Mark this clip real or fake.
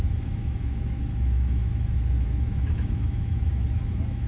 fake